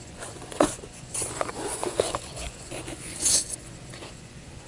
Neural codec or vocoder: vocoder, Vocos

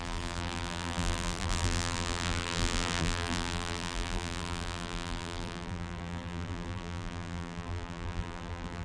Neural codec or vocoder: vocoder, BigVGAN v2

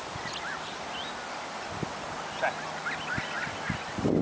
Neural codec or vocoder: none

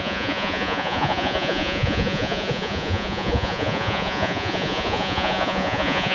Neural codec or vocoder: vocoder, Vocos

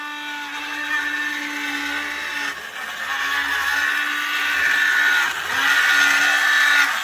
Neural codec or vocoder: none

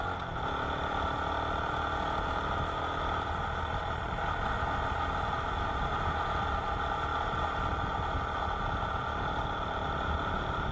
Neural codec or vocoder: none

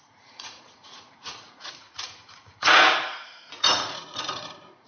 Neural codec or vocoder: vocoder, Vocos